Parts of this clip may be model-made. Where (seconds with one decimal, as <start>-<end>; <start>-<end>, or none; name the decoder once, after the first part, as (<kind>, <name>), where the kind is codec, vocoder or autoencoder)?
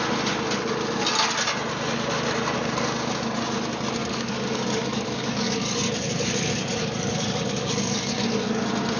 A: 4.0-8.2 (codec, DAC)